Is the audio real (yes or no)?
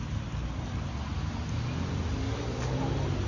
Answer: yes